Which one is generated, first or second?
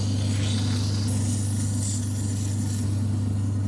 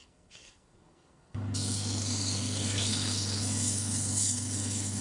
second